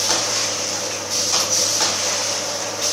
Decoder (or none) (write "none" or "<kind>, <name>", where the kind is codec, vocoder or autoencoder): vocoder, BigVGAN v2